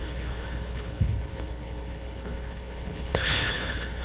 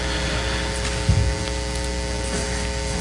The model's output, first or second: first